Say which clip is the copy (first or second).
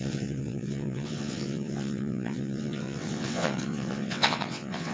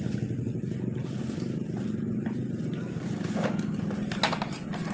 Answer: first